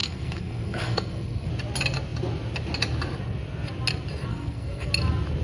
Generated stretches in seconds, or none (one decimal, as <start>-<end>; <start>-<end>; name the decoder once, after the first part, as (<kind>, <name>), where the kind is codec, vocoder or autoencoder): 0.0-1.5 (codec, SNAC); 4.3-4.9